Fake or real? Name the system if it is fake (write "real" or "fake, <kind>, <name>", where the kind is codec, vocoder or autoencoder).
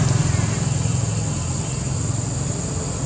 real